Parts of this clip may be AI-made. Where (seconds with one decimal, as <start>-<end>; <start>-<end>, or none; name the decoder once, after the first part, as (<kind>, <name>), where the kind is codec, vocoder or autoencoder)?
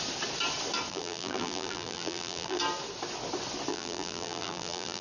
0.9-2.6 (vocoder, BigVGAN v2); 3.7-5.0